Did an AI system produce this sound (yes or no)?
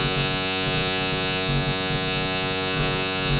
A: yes